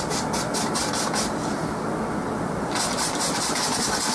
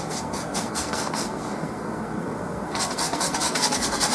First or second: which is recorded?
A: first